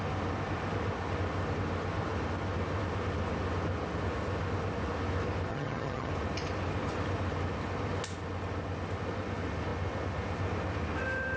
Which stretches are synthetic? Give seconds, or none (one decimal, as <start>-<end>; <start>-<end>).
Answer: 5.5-6.1